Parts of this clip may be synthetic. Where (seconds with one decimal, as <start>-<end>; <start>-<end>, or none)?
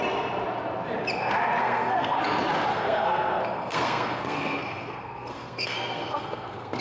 1.6-2.2; 2.7-6.8